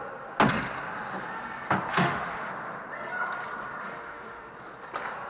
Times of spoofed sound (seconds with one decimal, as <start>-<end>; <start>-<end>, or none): 1.9-2.5; 3.8-4.5